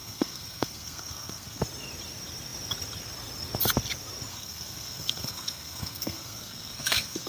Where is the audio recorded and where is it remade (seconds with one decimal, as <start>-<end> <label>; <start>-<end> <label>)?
0.0-1.6 remade; 1.6-4.3 recorded; 4.3-7.3 remade